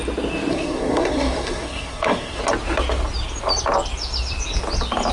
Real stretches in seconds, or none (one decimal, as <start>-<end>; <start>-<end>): 0.0-0.5; 2.4-5.1